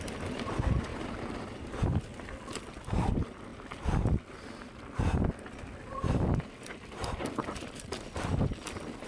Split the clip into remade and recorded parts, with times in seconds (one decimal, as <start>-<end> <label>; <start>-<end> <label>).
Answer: 0.0-0.9 recorded; 0.9-1.8 remade; 1.8-9.1 recorded